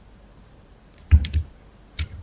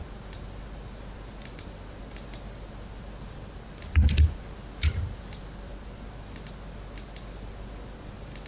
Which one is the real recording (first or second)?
second